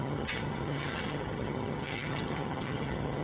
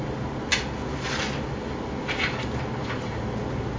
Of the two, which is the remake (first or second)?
first